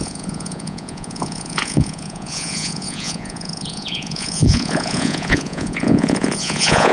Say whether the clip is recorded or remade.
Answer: remade